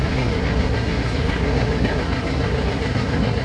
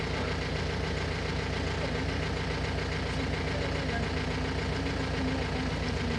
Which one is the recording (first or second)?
second